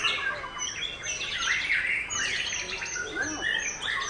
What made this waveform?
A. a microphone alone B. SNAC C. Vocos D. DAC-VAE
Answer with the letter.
A